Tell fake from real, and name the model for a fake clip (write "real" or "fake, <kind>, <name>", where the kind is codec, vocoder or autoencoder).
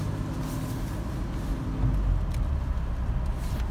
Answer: real